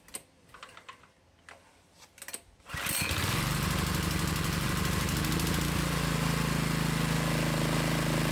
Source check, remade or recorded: recorded